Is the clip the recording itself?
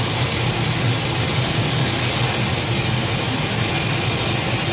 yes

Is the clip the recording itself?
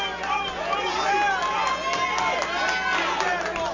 yes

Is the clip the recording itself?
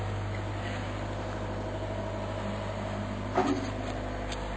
yes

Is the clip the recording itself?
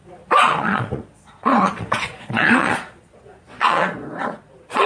no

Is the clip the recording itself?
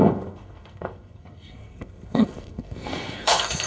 no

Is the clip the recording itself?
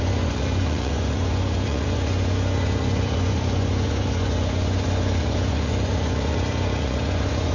no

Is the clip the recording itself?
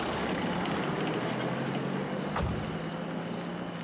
yes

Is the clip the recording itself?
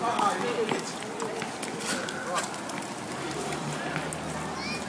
yes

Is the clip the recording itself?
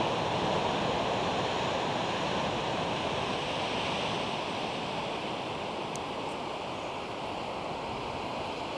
yes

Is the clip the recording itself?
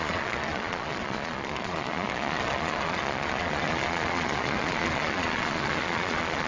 no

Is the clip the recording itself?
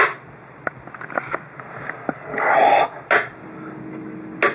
yes